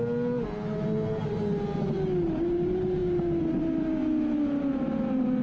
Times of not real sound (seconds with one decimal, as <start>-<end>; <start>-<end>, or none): none